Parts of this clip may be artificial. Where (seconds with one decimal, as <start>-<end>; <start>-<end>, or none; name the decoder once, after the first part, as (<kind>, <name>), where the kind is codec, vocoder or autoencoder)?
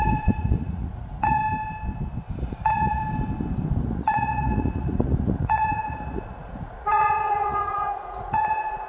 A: 0.0-1.4 (vocoder, Vocos); 2.4-3.0; 3.8-8.9